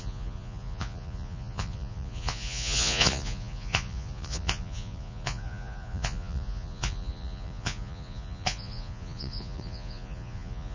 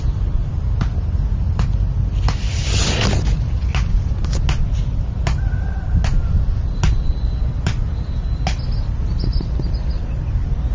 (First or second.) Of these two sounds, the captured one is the second